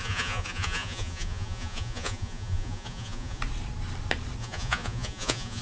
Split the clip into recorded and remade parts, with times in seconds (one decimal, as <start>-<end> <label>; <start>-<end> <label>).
0.0-3.4 remade; 3.4-4.4 recorded; 4.4-5.6 remade